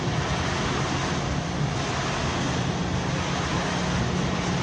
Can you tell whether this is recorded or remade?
recorded